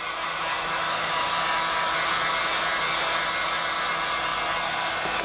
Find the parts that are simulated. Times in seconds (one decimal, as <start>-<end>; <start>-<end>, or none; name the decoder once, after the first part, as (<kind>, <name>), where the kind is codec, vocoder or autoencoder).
0.5-1.3 (autoencoder, DAC-VAE)